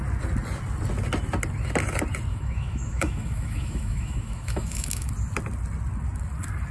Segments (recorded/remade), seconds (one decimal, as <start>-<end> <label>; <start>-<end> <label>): 0.0-2.3 recorded; 2.3-5.1 remade; 5.1-6.7 recorded